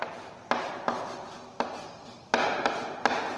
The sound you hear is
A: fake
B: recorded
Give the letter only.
B